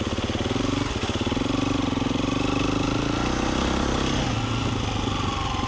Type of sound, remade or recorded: recorded